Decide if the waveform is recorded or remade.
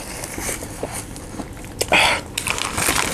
remade